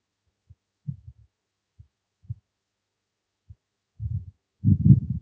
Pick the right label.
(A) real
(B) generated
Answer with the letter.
B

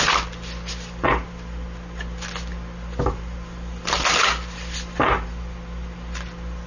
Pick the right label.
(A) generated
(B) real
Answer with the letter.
B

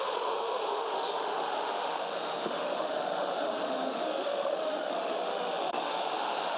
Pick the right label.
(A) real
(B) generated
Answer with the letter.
B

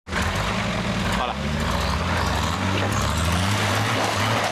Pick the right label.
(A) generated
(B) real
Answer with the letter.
B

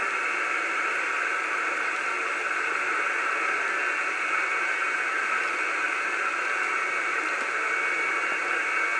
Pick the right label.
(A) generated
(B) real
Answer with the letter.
B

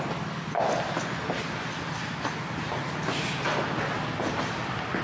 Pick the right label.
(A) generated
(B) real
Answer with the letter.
B